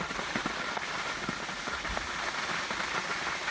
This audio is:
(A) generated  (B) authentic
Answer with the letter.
B